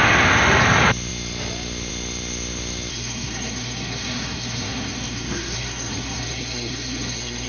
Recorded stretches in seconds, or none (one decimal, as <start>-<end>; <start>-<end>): 0.0-2.9